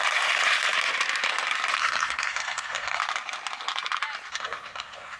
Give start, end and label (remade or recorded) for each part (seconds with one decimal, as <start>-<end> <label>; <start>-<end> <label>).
0.0-1.8 recorded; 1.8-3.0 remade; 3.0-4.3 recorded; 4.3-5.2 remade